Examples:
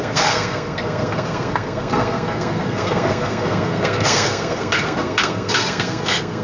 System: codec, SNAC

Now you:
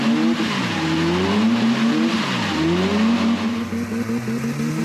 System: none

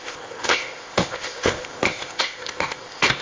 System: codec, ZipCodec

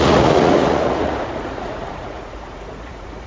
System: vocoder, Vocos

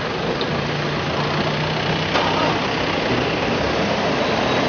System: none